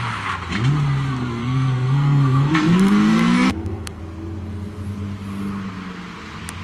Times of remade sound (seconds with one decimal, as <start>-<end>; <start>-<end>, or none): 1.4-4.0